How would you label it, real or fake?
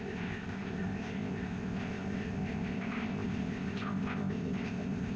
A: fake